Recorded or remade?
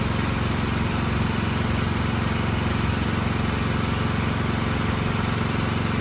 recorded